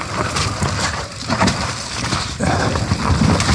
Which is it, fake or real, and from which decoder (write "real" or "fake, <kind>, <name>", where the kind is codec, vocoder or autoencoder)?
fake, vocoder, BigVGAN v2